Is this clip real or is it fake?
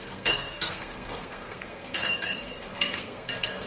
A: fake